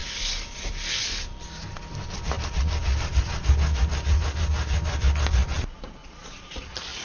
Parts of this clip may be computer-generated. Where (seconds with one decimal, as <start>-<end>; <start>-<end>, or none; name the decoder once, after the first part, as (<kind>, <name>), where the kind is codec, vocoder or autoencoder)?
6.0-6.6 (vocoder, Vocos)